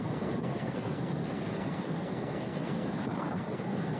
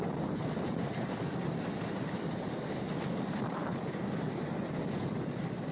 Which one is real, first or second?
second